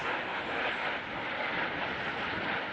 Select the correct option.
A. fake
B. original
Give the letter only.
B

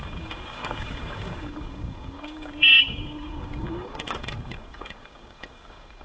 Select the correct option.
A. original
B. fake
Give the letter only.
B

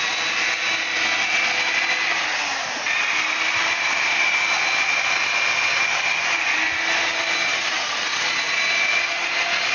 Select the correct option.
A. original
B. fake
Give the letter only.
A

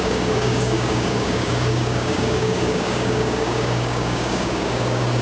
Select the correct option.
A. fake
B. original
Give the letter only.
A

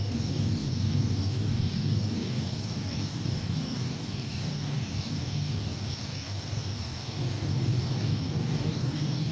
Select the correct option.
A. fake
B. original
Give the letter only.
A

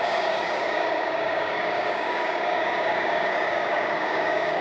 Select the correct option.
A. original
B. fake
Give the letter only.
B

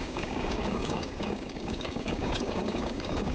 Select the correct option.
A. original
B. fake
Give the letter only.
B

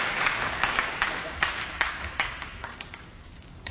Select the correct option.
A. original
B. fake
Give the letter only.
B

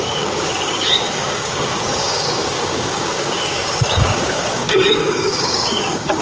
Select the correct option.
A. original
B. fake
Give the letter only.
B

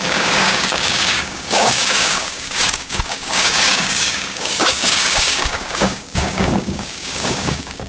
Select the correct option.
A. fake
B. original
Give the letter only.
A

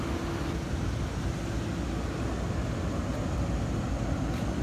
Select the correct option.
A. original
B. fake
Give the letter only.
A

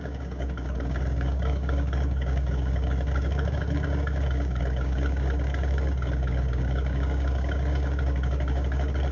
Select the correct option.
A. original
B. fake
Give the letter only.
B